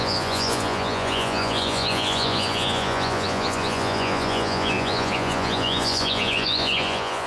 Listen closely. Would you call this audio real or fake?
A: fake